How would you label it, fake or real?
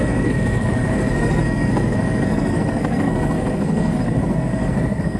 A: fake